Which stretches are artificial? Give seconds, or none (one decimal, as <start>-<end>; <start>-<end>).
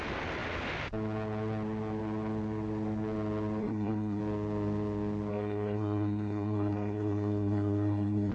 3.6-4.2; 5.3-8.3